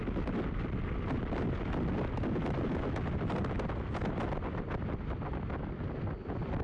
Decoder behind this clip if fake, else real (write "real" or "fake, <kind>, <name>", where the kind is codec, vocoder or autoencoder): real